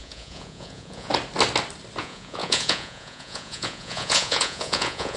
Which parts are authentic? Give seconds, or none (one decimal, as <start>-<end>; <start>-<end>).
1.1-2.0

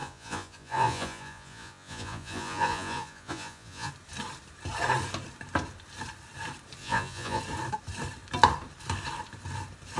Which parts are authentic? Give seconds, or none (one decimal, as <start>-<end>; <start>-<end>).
3.9-6.8; 7.4-10.0

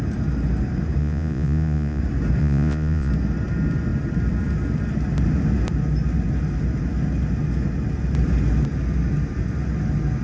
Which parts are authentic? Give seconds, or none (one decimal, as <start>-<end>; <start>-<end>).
0.0-1.0; 2.0-2.4; 3.1-10.2